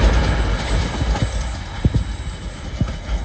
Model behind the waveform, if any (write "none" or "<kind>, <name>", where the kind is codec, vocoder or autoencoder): none